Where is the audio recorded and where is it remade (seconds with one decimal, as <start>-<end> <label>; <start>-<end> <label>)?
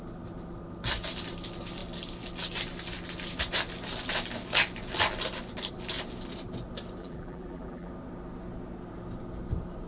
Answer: 0.0-7.0 recorded; 7.0-7.9 remade; 7.9-9.9 recorded